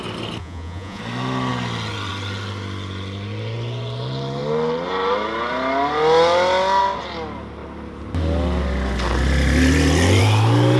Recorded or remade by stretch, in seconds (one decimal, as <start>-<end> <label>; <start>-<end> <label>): 0.0-0.4 recorded; 0.4-1.0 remade; 1.0-10.8 recorded